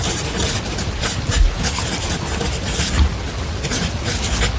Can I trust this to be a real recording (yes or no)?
yes